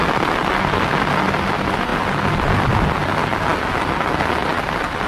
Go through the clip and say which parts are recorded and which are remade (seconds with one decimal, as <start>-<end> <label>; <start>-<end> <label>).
0.0-5.1 recorded